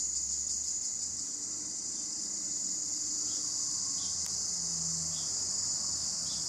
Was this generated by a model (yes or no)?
no